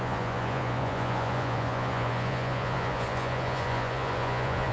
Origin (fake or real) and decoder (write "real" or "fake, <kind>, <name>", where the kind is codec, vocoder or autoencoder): fake, vocoder, Vocos